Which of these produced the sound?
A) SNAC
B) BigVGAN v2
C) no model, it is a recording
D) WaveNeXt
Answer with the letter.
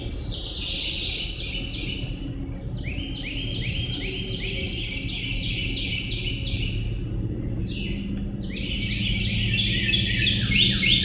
C